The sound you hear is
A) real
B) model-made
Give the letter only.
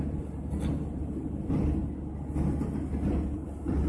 A